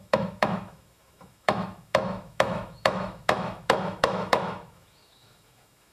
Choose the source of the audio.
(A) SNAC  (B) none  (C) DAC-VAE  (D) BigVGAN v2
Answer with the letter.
C